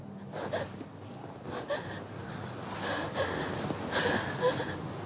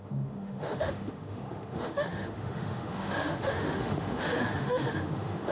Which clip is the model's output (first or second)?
second